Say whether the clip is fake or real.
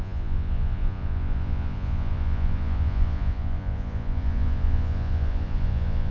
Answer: fake